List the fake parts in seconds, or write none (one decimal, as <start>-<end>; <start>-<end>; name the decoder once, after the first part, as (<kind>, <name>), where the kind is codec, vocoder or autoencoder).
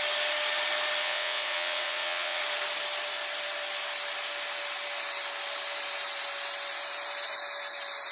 1.0-2.4 (vocoder, WaveNeXt)